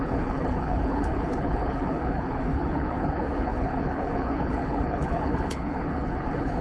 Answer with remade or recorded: remade